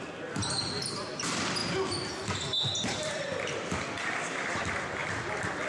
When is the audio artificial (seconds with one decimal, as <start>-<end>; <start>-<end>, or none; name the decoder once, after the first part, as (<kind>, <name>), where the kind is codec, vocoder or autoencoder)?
2.7-4.6 (vocoder, BigVGAN v2); 5.0-5.7